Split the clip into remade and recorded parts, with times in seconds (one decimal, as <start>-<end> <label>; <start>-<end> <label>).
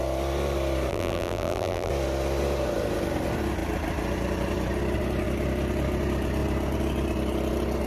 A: 0.0-0.9 recorded; 0.9-1.9 remade; 1.9-7.9 recorded